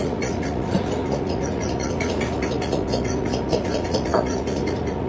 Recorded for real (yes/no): no